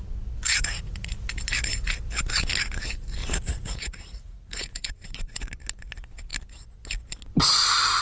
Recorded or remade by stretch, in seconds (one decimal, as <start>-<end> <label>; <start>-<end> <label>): 0.0-0.5 recorded; 0.5-1.1 remade; 1.1-3.2 recorded; 3.2-5.4 remade; 5.4-8.0 recorded